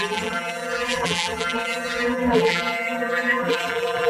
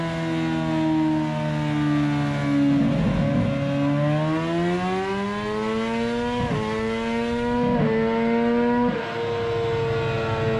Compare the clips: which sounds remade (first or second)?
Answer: first